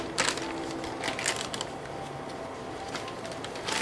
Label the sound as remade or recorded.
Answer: recorded